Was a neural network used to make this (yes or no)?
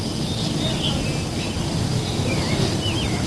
no